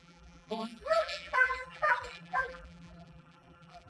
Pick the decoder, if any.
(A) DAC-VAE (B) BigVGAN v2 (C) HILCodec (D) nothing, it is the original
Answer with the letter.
B